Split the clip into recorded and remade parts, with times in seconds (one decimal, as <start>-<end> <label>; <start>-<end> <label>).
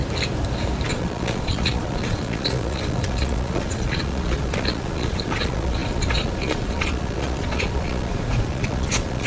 0.0-0.9 recorded; 0.9-9.3 remade